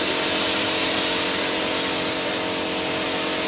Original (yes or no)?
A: yes